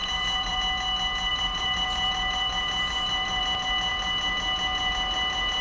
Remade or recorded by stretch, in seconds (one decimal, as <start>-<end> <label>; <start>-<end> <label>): 0.0-0.6 remade; 0.6-1.3 recorded; 1.3-3.4 remade; 3.4-5.6 recorded